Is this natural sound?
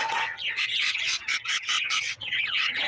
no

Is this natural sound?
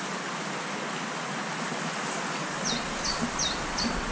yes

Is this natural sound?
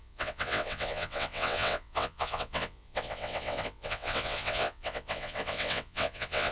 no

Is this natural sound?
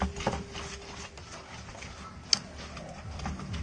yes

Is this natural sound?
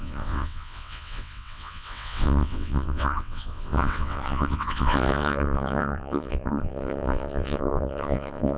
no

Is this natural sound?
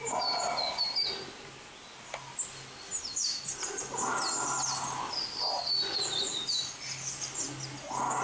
yes